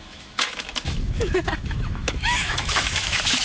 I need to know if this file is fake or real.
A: fake